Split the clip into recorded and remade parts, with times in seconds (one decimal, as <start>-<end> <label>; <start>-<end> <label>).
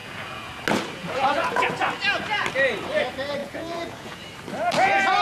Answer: 0.0-0.5 remade; 0.5-1.0 recorded; 1.0-1.7 remade; 1.7-3.4 recorded; 3.4-4.2 remade; 4.2-5.2 recorded